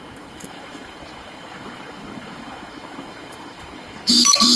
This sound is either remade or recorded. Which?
remade